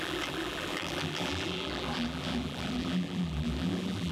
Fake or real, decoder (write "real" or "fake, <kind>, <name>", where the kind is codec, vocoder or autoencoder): fake, vocoder, BigVGAN v2